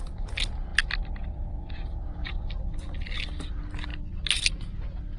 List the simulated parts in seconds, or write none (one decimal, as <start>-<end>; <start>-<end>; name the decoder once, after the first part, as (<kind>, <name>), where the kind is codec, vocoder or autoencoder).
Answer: none

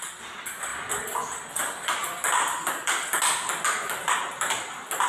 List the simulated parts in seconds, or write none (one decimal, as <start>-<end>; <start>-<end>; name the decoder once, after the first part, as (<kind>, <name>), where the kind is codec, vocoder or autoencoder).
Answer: 0.7-1.5 (vocoder, BigVGAN v2)

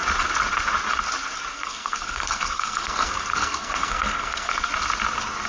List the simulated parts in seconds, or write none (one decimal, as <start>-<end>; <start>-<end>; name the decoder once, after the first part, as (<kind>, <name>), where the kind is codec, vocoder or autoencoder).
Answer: 1.5-4.7 (codec, SNAC)

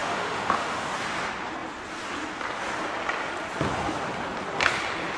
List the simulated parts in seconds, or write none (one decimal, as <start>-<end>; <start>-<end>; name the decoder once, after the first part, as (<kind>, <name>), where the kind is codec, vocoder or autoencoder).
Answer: 0.0-0.9 (autoencoder, DAC-VAE)

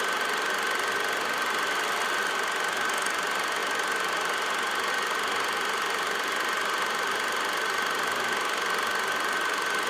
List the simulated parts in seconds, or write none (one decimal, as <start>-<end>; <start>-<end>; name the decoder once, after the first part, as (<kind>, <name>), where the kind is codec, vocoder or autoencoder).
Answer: none

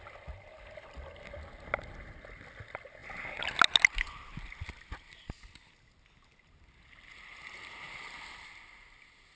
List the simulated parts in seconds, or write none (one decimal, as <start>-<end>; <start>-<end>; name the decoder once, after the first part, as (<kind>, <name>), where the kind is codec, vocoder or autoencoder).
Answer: none